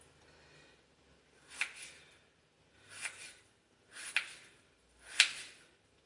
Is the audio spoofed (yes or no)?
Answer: no